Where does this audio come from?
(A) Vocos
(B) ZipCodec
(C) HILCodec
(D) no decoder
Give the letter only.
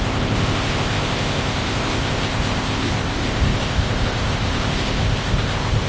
B